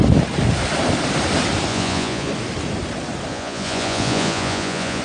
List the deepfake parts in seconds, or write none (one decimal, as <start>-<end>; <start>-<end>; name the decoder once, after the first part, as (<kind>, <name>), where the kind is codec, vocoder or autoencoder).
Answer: 1.7-2.3 (vocoder, Vocos); 3.3-5.0

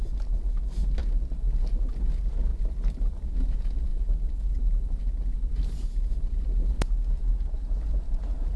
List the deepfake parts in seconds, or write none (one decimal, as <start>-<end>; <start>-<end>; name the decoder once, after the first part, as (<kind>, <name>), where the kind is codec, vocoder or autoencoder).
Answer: 2.5-3.4 (vocoder, BigVGAN v2); 7.3-8.2

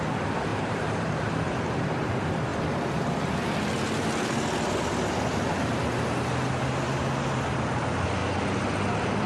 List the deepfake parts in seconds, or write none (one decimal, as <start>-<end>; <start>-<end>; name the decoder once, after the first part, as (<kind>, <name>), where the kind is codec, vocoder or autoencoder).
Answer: 0.5-2.1 (vocoder, BigVGAN v2)

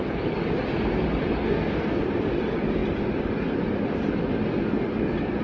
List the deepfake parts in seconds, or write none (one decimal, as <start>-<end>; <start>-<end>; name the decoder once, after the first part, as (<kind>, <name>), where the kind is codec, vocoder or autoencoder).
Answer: 1.4-2.0 (codec, SNAC)